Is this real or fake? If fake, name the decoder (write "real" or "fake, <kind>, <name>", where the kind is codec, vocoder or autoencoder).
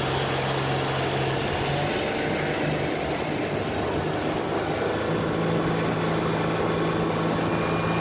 real